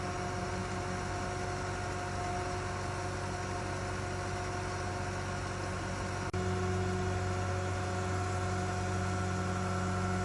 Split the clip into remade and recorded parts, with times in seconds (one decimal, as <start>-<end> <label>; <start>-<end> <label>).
0.0-10.2 recorded